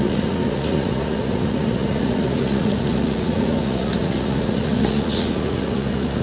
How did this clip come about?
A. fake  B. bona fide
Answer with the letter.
A